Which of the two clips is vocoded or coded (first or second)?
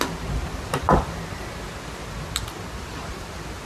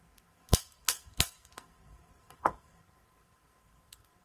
second